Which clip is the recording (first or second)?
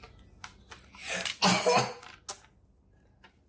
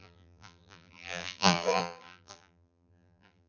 first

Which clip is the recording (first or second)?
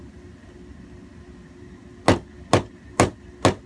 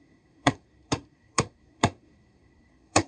first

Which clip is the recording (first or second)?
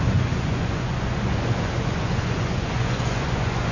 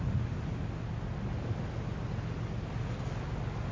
second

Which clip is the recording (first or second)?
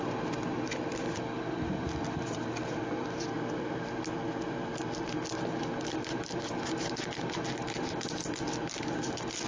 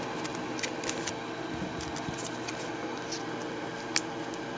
second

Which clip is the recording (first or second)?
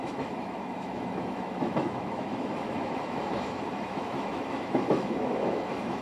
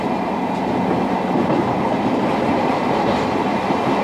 second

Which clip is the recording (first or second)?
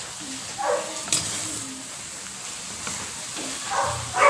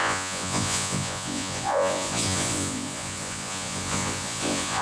first